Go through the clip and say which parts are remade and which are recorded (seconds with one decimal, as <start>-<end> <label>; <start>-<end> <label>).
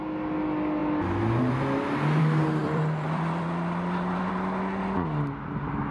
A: 0.0-2.6 recorded; 2.6-4.3 remade; 4.3-5.9 recorded